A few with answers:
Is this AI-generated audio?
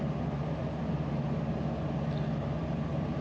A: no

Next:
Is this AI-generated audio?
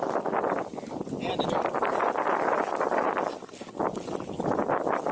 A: no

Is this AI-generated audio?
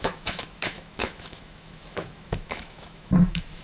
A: yes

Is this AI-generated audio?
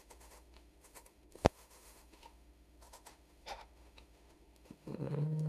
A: yes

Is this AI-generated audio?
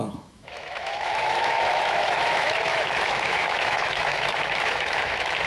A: yes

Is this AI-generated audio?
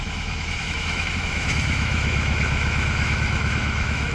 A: yes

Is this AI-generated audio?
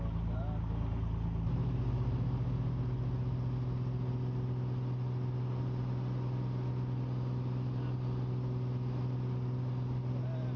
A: no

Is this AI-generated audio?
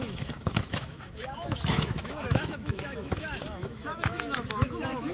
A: yes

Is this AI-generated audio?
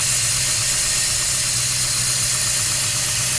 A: no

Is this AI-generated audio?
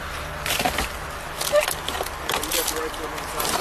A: no